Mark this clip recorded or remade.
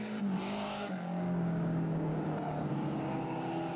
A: remade